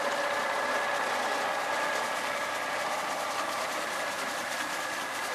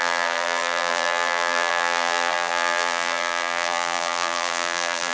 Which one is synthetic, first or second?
second